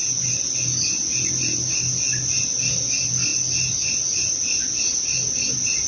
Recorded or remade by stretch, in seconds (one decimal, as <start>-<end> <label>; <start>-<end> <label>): 0.0-5.9 recorded